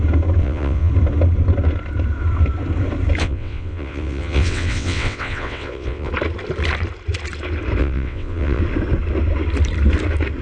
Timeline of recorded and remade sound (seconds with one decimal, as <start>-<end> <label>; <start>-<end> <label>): 0.0-0.4 recorded; 0.4-0.9 remade; 0.9-3.2 recorded; 3.2-6.1 remade; 6.1-7.8 recorded; 7.8-8.6 remade; 8.6-10.4 recorded